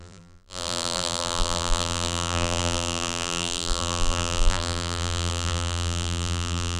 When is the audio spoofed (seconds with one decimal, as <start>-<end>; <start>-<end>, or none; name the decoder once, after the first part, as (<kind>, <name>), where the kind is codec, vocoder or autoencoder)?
0.0-6.8 (vocoder, BigVGAN v2)